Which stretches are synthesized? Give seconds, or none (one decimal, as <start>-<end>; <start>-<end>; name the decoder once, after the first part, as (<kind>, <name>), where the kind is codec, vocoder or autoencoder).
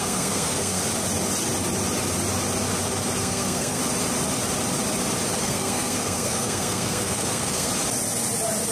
0.0-0.8 (codec, SNAC); 3.2-3.8; 5.4-7.7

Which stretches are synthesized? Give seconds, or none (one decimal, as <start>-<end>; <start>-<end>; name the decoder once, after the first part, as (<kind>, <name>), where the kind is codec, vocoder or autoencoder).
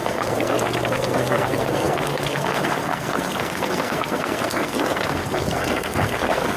0.0-6.6 (codec, SNAC)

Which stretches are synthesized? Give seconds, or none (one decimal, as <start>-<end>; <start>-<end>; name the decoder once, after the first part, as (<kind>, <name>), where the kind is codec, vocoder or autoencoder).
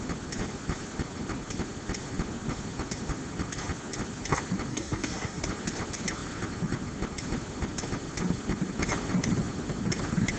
4.7-5.4 (codec, SNAC)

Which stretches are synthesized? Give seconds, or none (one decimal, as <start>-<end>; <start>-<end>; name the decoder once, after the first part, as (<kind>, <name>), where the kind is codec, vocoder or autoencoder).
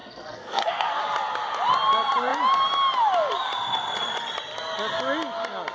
0.0-1.0 (codec, SNAC)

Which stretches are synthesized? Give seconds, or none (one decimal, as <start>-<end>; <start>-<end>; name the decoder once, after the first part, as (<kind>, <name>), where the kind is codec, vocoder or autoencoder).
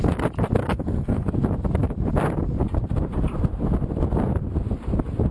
0.6-1.3 (codec, SNAC)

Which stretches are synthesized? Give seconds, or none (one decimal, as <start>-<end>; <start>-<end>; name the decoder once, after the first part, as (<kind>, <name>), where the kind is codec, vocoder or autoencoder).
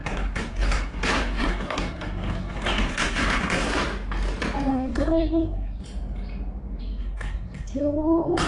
0.0-3.8 (codec, SNAC); 4.7-5.8; 6.8-8.5